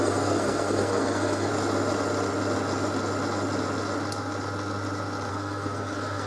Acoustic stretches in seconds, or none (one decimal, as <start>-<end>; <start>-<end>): 1.5-5.3